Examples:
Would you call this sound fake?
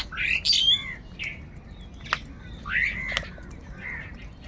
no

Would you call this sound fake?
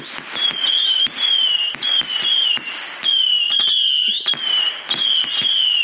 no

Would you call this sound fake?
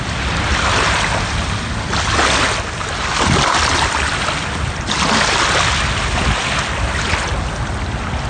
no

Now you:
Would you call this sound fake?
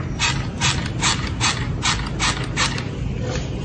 no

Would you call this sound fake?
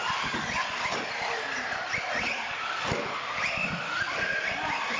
no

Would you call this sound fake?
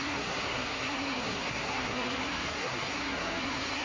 yes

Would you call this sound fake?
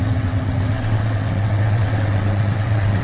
yes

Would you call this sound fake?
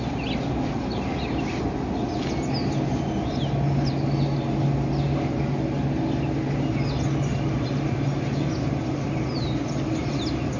no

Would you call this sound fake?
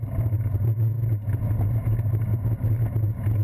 no